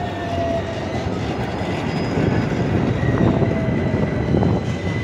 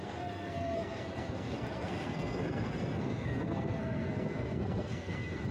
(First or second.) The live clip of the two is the first